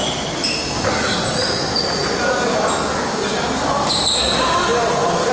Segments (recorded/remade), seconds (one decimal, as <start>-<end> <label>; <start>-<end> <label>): 0.0-5.3 recorded